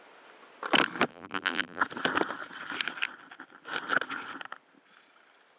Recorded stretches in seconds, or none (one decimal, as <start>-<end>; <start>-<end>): 0.0-1.1; 1.8-5.6